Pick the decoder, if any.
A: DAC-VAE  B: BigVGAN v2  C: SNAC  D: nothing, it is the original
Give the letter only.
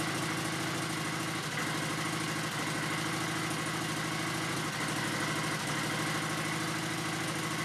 D